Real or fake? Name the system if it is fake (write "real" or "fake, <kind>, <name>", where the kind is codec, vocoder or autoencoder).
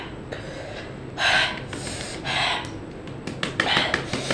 real